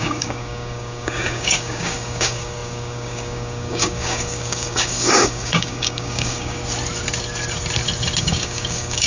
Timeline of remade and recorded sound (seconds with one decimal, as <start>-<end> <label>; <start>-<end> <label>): 0.0-6.6 remade; 6.6-8.2 recorded; 8.2-9.1 remade